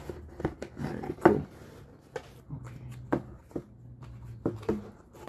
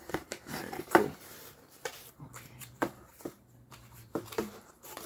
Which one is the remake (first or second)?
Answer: second